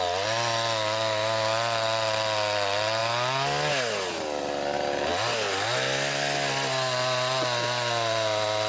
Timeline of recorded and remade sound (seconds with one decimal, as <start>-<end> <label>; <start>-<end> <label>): 0.0-8.7 recorded